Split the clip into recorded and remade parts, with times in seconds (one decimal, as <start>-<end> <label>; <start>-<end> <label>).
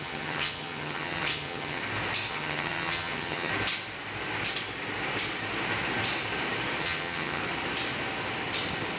0.0-1.8 remade; 1.8-2.3 recorded; 2.3-3.5 remade; 3.5-6.8 recorded; 6.8-7.4 remade; 7.4-9.0 recorded